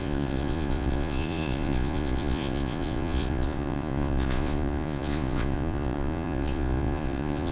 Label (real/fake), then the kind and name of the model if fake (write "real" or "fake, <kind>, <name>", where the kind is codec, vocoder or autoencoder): fake, vocoder, Vocos